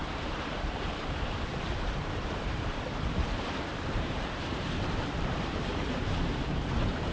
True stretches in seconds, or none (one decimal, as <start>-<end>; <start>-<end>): none